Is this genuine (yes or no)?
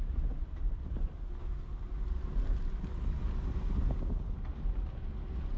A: yes